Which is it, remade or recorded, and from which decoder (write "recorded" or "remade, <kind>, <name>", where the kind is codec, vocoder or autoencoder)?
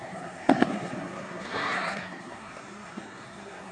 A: remade, codec, SNAC